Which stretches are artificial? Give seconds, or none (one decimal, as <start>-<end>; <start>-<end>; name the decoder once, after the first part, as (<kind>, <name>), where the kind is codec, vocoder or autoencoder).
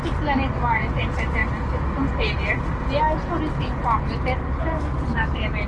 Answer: none